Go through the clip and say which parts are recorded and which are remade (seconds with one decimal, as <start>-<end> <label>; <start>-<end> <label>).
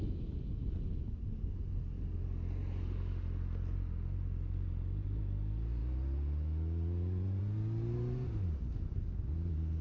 0.0-9.8 recorded